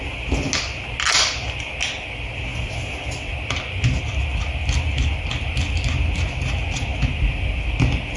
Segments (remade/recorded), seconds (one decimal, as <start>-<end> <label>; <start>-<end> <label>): 0.0-8.2 recorded